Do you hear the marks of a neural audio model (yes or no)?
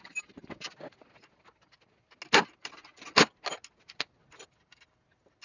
no